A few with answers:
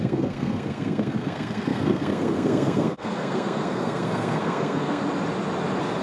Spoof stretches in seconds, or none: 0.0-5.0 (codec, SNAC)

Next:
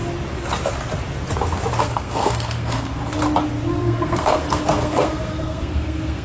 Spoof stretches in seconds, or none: 1.8-3.0 (codec, SNAC); 3.7-6.2

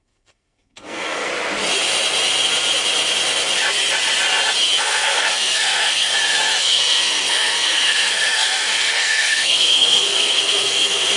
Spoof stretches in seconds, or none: 0.0-1.3 (codec, SNAC); 4.8-6.1; 6.6-11.2

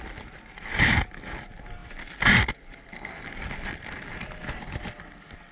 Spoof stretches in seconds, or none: none